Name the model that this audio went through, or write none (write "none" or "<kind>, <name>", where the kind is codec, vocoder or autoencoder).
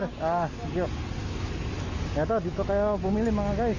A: none